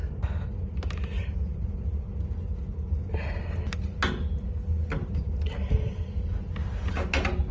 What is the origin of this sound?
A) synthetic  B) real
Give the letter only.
B